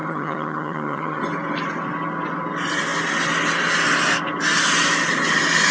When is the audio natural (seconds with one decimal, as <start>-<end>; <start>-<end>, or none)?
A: 1.2-5.7